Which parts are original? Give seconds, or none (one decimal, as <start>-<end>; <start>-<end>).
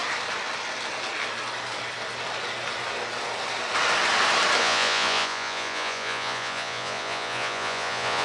0.0-4.6